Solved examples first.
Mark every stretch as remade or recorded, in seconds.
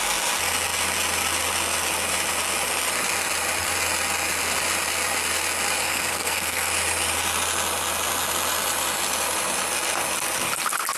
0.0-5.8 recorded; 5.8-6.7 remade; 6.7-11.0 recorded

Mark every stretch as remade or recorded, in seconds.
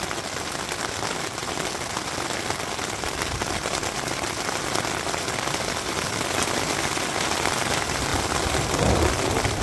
0.0-8.1 recorded; 8.1-9.1 remade; 9.1-9.6 recorded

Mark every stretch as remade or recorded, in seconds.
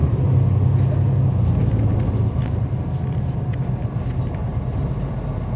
0.0-5.6 recorded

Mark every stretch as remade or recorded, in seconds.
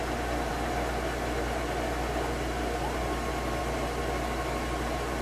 0.0-5.2 recorded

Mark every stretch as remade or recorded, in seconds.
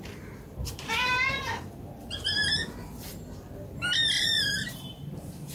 0.0-2.4 remade; 2.4-4.2 recorded; 4.2-5.5 remade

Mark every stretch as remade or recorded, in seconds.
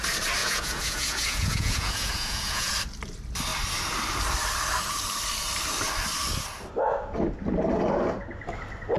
0.0-0.4 recorded; 0.4-2.7 remade; 2.7-9.0 recorded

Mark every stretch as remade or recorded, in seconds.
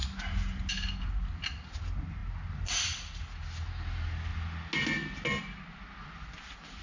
0.0-6.8 recorded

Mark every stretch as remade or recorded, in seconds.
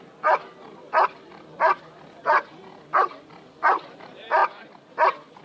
0.0-5.4 recorded